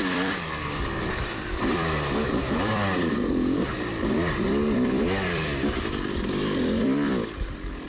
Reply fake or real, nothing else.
fake